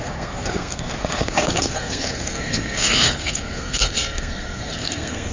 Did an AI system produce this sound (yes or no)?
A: yes